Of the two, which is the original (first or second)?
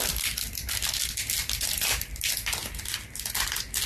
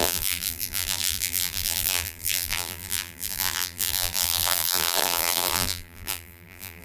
first